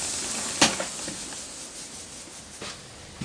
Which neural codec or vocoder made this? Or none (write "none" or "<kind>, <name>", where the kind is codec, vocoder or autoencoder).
none